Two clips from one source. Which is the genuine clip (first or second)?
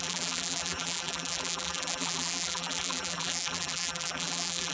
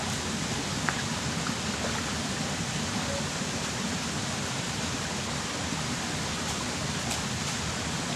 second